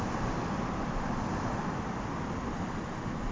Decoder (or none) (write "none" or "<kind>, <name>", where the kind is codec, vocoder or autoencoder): none